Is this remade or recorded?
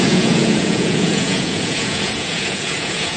remade